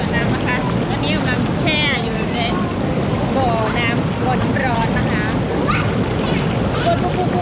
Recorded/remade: recorded